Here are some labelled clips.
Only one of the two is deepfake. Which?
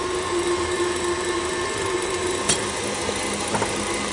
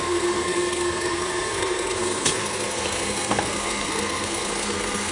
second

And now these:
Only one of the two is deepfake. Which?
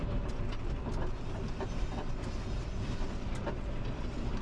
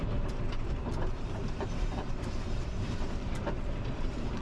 second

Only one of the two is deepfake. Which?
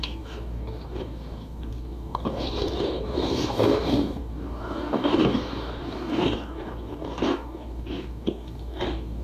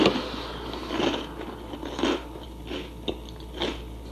first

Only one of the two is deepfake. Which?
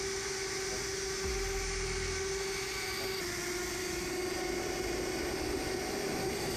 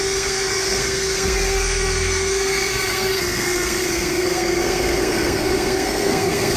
second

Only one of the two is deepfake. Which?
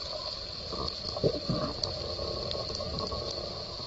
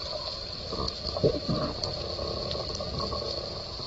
first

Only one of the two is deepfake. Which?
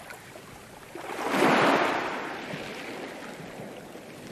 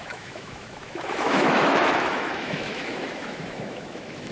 second